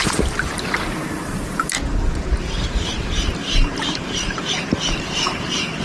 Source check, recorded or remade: remade